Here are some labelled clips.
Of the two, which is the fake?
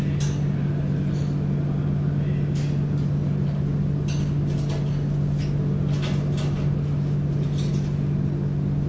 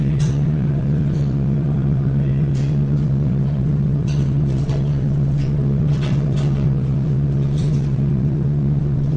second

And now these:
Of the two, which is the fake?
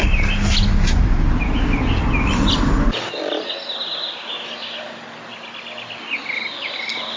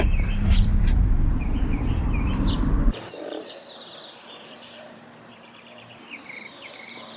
second